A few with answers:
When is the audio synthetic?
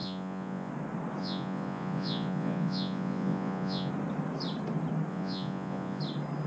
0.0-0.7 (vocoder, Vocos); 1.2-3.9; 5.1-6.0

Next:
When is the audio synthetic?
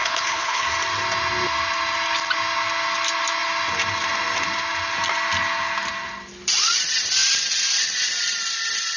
0.0-0.7 (codec, HILCodec)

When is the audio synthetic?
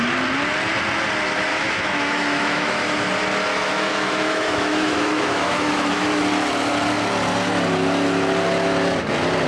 1.5-3.1 (autoencoder, DAC-VAE); 3.5-6.2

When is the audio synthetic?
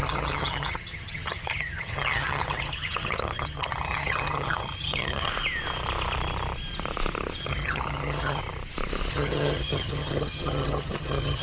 0.0-5.3 (vocoder, HiFi-GAN); 7.4-8.4; 9.1-11.4